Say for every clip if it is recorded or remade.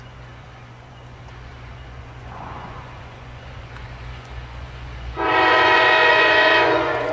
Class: remade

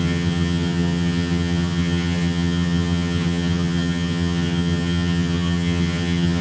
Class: remade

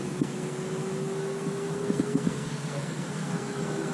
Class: remade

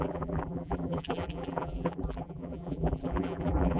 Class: remade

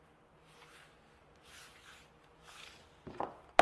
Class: recorded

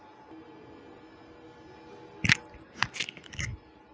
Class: recorded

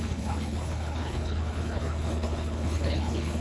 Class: remade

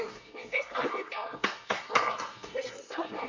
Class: remade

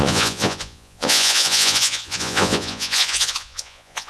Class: remade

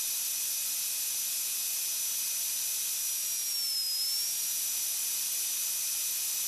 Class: recorded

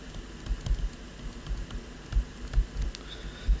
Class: recorded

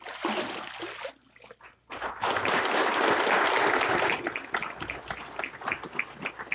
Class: recorded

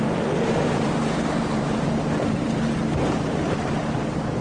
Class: remade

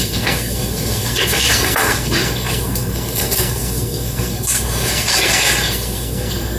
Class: remade